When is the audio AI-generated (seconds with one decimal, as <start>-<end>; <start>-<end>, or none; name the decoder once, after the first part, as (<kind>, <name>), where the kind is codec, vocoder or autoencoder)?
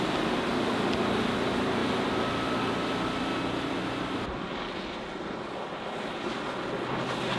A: none